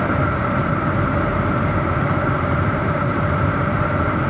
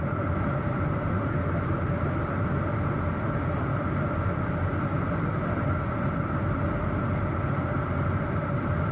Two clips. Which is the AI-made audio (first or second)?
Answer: first